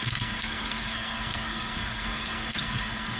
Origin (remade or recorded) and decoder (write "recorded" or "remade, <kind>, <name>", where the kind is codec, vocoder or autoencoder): remade, codec, SNAC